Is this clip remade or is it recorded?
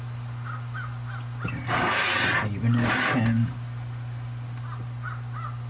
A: recorded